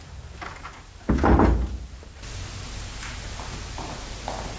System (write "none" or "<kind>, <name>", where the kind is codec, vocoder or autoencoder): none